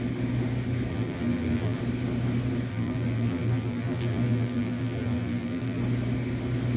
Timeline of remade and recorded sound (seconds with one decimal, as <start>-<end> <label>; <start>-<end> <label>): 0.0-0.9 recorded; 0.9-1.8 remade; 1.8-2.7 recorded; 2.7-5.8 remade; 5.8-6.8 recorded